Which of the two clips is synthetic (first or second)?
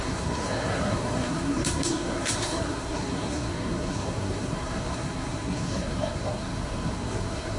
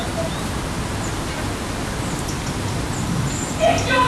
first